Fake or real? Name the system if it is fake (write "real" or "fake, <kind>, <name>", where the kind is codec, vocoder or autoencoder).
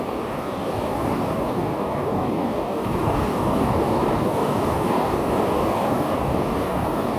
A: fake, codec, DAC